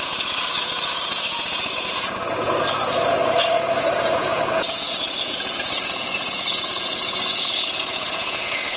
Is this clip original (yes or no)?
no